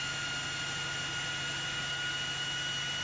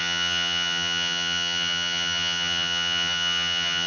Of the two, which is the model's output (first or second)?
second